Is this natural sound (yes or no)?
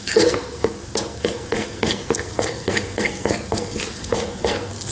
no